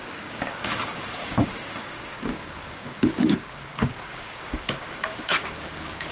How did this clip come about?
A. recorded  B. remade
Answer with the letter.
B